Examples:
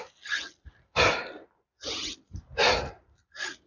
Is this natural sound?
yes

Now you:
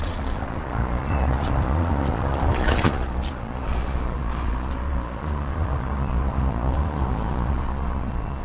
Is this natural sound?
no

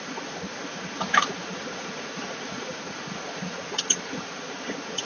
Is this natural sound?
no